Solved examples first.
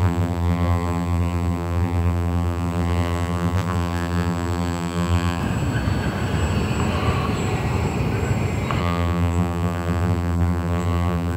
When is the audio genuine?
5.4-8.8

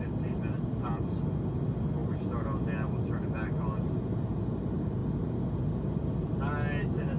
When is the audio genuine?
0.0-7.2

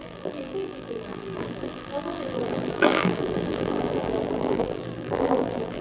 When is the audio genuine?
none

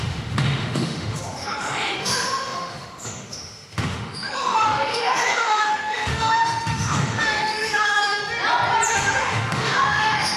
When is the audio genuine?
8.2-8.9

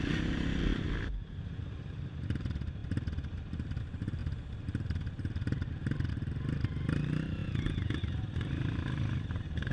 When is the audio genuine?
0.0-7.4; 8.0-9.7

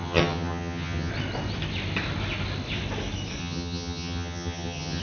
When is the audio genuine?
1.1-3.4

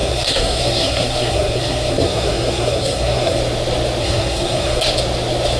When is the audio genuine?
3.4-4.0; 4.8-5.6

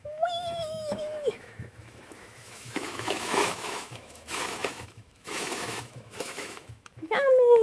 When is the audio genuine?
none